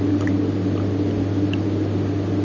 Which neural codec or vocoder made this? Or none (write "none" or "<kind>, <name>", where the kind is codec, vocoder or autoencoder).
none